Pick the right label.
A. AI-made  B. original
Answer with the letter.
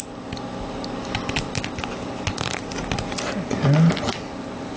B